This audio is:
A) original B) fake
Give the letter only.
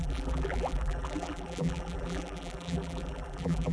B